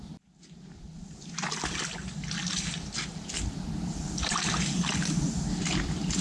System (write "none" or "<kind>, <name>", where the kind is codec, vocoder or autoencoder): none